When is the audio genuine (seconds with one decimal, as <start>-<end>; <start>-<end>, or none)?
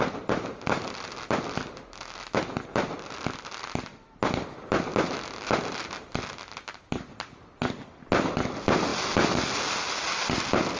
0.0-10.8